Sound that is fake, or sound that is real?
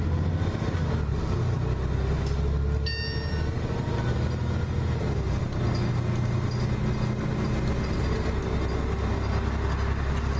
real